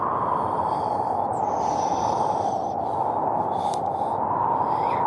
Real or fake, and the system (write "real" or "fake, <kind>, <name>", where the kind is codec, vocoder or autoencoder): real